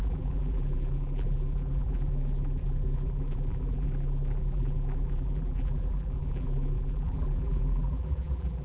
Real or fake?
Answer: fake